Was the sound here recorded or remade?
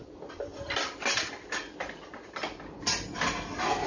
recorded